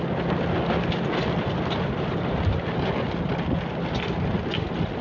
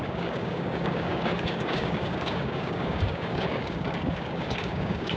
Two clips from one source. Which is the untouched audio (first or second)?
first